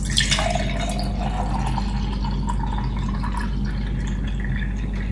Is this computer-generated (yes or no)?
no